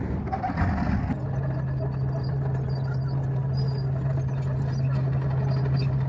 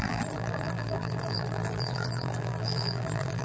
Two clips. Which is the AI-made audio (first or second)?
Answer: second